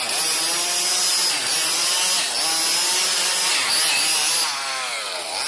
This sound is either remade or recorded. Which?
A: recorded